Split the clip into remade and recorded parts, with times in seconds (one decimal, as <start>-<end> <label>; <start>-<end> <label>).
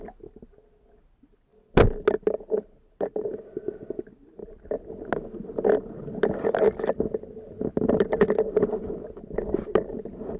0.0-10.4 recorded